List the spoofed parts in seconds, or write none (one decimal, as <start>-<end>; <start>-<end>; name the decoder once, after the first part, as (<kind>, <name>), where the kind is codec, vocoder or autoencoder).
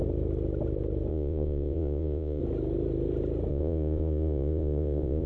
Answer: 1.1-2.4 (vocoder, Vocos); 3.5-5.3